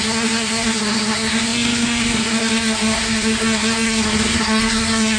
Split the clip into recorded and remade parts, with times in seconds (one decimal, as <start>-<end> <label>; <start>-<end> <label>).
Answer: 0.0-5.2 remade